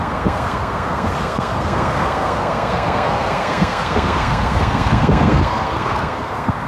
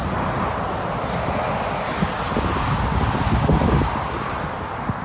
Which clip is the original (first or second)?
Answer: second